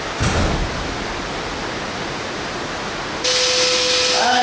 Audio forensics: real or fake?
real